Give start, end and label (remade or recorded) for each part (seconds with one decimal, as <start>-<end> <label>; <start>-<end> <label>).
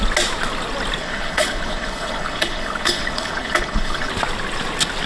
0.0-1.0 recorded; 1.0-4.1 remade; 4.1-5.1 recorded